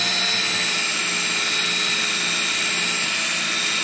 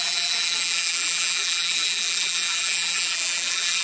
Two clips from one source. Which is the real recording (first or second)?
first